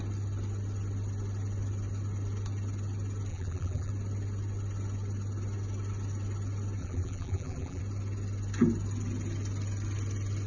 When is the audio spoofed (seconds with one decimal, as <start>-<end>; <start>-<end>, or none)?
3.3-3.9; 6.8-7.8